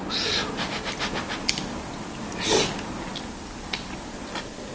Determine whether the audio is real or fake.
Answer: real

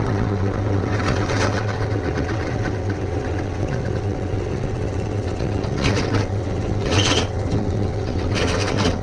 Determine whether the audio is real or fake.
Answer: fake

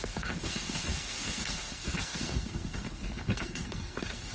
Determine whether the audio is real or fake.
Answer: fake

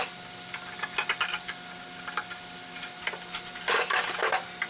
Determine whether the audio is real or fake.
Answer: real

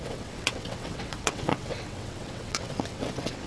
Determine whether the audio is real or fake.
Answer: fake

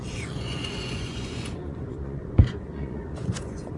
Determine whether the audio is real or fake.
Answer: fake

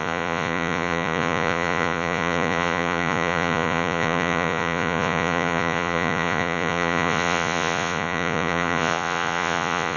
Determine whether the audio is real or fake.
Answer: fake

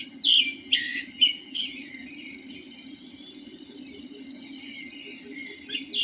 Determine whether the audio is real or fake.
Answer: real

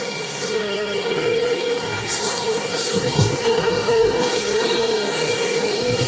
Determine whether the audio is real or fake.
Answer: fake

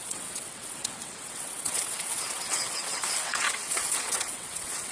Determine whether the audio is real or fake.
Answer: fake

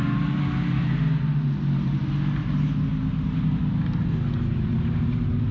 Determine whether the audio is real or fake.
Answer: real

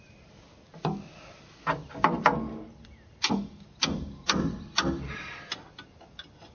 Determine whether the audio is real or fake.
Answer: real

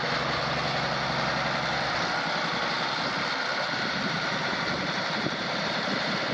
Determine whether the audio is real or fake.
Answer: real